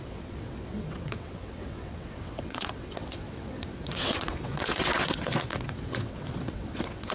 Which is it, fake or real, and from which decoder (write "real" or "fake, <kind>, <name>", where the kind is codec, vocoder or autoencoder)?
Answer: fake, vocoder, WaveNeXt